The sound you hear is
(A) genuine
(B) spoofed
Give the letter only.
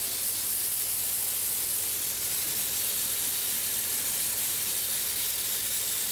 A